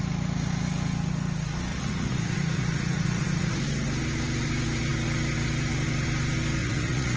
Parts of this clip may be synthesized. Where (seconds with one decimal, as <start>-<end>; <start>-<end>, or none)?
1.7-3.5; 6.6-7.2